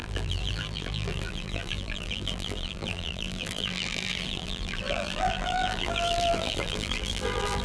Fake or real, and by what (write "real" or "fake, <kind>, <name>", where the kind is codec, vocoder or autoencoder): fake, vocoder, BigVGAN v2